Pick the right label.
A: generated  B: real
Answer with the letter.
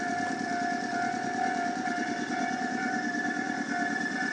A